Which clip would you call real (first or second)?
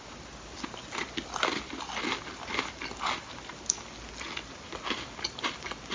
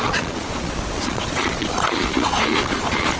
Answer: first